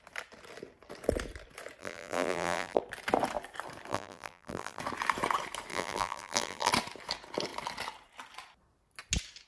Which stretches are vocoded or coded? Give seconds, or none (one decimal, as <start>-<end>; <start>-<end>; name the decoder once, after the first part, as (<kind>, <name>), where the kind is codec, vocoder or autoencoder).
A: 1.8-2.8 (vocoder, BigVGAN v2); 3.9-4.8; 5.7-6.7